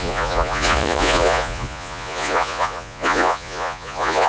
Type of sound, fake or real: fake